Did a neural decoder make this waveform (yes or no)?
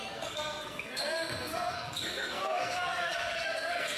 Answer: yes